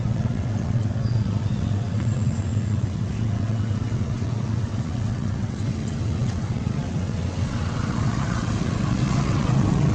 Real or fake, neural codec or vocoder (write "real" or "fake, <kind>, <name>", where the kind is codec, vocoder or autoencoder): fake, vocoder, WaveNeXt